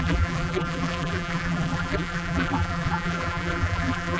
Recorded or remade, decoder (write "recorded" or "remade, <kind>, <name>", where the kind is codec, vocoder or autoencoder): remade, vocoder, BigVGAN v2